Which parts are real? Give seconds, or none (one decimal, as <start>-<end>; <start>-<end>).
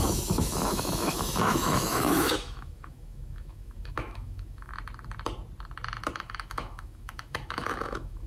4.7-6.1